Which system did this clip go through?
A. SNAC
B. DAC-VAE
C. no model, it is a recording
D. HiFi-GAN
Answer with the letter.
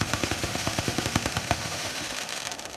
B